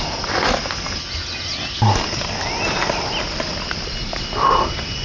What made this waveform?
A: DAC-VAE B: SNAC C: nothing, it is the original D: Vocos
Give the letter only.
C